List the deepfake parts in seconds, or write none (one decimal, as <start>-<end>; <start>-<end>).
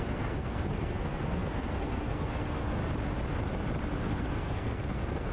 0.0-2.8; 4.0-5.3